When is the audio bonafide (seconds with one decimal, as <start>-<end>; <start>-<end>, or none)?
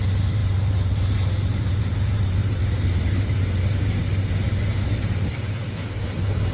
4.0-5.3